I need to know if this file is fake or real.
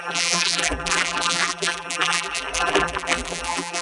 fake